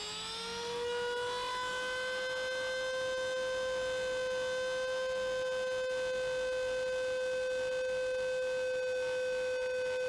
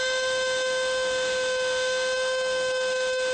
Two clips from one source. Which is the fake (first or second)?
second